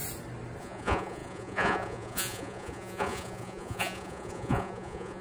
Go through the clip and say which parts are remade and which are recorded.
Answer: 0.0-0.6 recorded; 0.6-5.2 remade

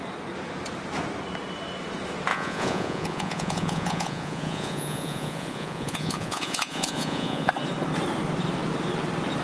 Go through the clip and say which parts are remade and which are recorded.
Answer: 0.0-2.3 recorded; 2.3-7.5 remade; 7.5-9.4 recorded

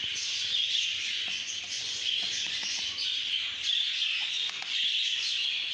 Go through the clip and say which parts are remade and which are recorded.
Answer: 0.0-0.6 recorded; 0.6-2.8 remade; 2.8-4.2 recorded; 4.2-4.8 remade; 4.8-5.7 recorded